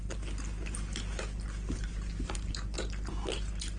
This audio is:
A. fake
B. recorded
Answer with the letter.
B